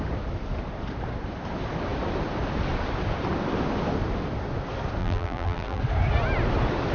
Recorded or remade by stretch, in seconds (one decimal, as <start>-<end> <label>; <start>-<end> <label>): 0.0-5.0 recorded; 5.0-5.8 remade; 5.8-6.9 recorded